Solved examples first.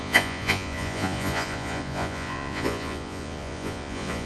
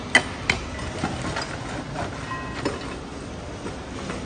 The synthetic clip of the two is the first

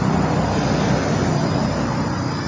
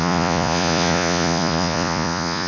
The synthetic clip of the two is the second